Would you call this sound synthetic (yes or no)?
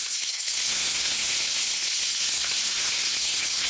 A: yes